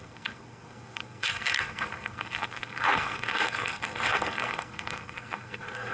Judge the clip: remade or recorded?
remade